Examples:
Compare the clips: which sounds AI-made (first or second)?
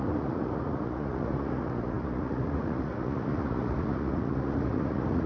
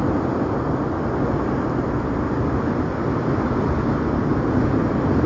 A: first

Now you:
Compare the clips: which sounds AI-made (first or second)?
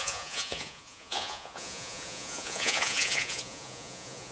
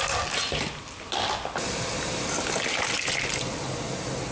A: first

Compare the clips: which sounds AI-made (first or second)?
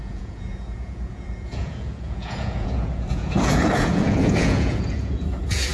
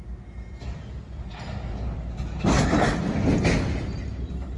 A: first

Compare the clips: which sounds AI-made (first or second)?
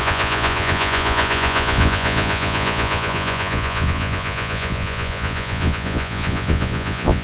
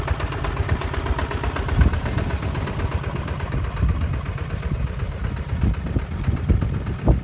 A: first